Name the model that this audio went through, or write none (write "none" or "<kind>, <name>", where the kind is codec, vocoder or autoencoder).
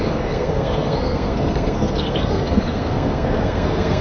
codec, SNAC